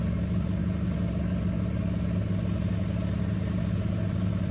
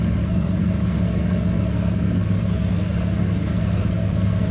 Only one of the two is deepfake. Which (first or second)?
second